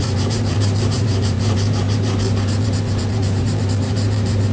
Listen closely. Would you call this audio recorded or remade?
remade